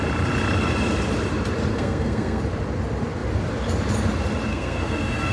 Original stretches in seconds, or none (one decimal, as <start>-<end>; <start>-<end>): 0.0-1.7; 2.4-4.5